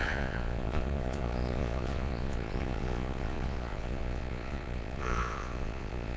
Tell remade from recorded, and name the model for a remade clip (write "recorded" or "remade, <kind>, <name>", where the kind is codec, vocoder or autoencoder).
remade, vocoder, Vocos